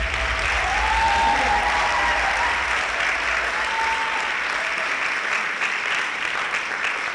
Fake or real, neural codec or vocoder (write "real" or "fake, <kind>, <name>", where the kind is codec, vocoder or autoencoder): real